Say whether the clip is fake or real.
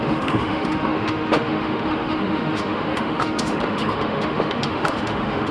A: fake